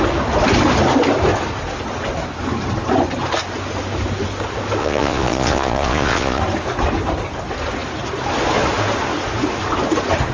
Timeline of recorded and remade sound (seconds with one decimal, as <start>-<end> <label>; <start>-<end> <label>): 0.0-4.8 recorded; 4.8-6.4 remade; 6.4-10.3 recorded